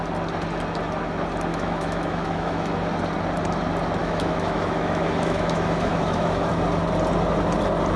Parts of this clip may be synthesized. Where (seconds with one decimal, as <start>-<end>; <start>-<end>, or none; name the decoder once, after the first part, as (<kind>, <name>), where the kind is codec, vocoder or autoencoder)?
1.5-2.6 (autoencoder, DAC-VAE); 4.0-6.5

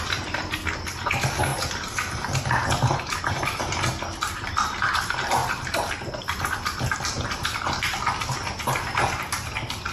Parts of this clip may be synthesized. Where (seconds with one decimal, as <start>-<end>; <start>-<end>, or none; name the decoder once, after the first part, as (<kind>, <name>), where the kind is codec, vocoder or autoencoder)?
none

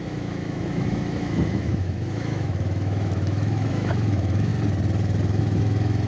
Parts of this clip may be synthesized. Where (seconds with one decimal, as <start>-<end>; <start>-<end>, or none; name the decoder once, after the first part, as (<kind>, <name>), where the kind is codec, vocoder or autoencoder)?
0.0-4.5 (autoencoder, DAC-VAE); 5.4-6.1

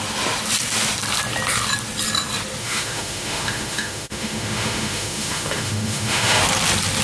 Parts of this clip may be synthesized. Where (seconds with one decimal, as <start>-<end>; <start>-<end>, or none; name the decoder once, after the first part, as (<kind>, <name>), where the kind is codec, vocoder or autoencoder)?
2.6-6.4 (autoencoder, DAC-VAE)

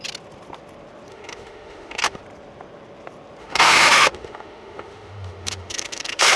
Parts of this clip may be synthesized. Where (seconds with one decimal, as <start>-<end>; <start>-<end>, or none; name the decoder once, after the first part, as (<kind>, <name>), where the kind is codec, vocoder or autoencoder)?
1.1-2.2 (autoencoder, DAC-VAE); 3.4-6.4